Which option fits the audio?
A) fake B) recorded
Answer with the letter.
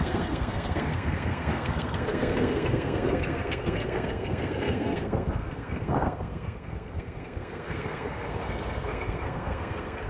A